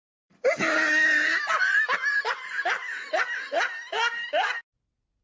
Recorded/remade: recorded